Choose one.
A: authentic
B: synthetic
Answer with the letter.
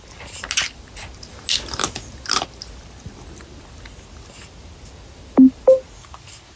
A